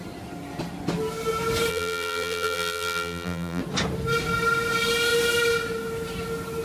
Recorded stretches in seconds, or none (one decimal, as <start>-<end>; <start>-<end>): 0.0-1.7; 3.6-6.6